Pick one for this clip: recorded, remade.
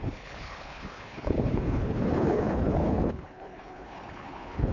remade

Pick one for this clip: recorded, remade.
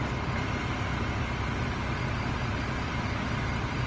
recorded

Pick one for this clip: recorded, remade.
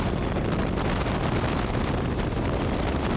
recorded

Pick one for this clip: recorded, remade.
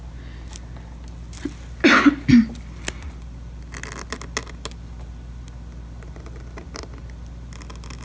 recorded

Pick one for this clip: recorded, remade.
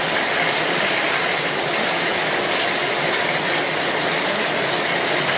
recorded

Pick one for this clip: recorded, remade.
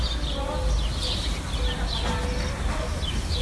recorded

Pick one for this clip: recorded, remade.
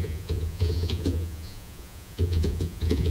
remade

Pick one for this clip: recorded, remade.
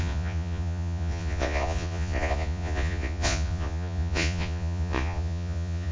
remade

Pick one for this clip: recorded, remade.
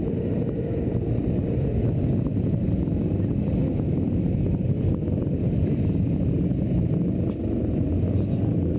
recorded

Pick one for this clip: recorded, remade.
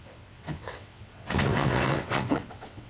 remade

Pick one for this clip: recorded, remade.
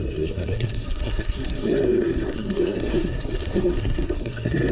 remade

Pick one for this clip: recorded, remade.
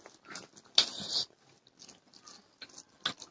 recorded